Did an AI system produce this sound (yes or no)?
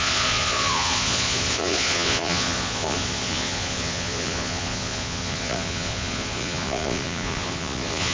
yes